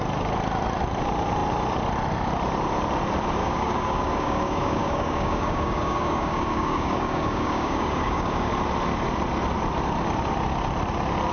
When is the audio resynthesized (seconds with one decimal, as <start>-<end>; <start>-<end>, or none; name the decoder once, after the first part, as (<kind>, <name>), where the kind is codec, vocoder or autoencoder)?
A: 3.4-8.5 (codec, DAC)